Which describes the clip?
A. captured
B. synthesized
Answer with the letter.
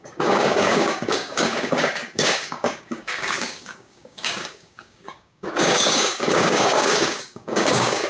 B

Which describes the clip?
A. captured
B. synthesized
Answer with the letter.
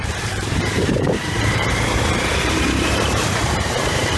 B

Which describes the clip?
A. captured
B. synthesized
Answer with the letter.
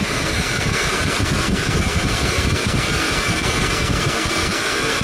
B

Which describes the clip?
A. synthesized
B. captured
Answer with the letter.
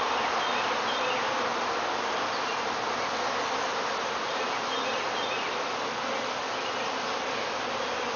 B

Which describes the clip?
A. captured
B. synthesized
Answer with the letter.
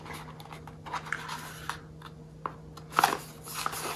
A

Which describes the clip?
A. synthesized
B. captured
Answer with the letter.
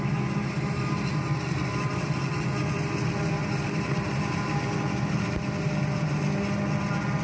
B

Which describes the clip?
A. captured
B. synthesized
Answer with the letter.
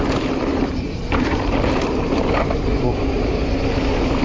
A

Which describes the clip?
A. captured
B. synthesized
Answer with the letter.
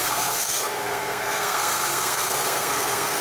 B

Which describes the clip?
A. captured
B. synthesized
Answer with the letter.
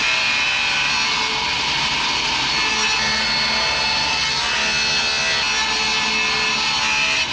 A